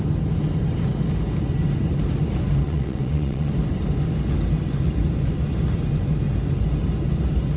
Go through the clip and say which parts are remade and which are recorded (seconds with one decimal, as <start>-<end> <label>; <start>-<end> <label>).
0.0-2.6 recorded; 2.6-3.5 remade; 3.5-7.6 recorded

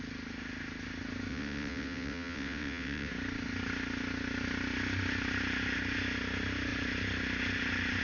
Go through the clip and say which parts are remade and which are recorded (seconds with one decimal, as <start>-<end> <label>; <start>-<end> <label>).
0.0-1.3 recorded; 1.3-3.1 remade; 3.1-8.0 recorded

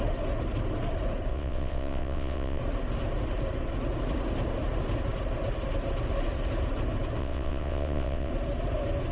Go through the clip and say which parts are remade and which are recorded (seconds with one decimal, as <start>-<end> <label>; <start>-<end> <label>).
0.0-1.3 recorded; 1.3-2.6 remade; 2.6-7.2 recorded; 7.2-8.3 remade; 8.3-9.1 recorded